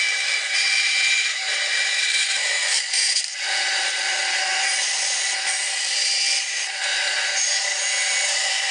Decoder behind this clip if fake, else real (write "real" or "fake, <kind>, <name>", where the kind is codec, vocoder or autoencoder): fake, vocoder, BigVGAN v2